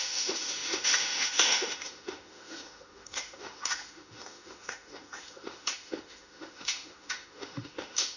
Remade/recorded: remade